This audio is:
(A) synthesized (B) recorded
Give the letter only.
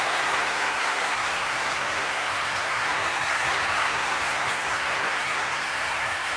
A